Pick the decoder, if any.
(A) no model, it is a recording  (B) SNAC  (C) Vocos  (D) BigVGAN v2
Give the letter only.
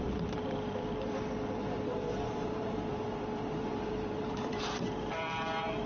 D